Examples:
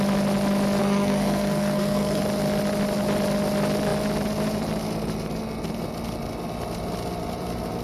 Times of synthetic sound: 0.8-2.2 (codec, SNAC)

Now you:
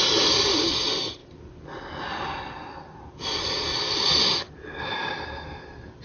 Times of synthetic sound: none

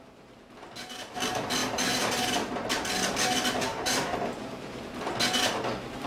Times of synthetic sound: 3.7-4.8 (vocoder, BigVGAN v2)

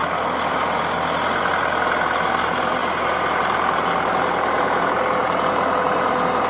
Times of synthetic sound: none

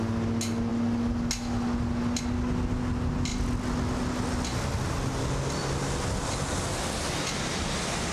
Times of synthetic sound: none

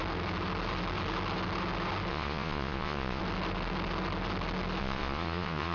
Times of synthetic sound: 2.1-3.2 (vocoder, Vocos); 4.8-5.7

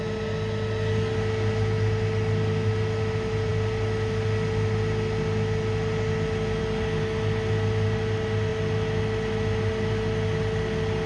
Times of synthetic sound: none

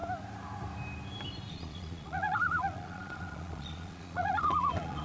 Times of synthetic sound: 1.5-5.0 (vocoder, Vocos)